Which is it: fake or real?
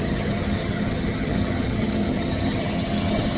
fake